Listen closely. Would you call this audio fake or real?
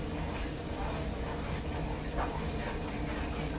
real